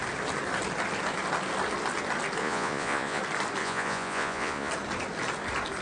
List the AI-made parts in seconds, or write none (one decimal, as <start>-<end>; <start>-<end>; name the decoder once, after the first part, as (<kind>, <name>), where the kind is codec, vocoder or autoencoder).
2.4-3.2 (vocoder, Vocos); 3.6-4.7